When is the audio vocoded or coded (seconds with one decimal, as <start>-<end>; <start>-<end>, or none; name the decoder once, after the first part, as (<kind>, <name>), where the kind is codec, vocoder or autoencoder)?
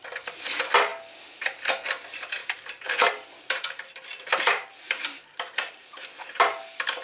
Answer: 2.4-6.0 (vocoder, BigVGAN v2)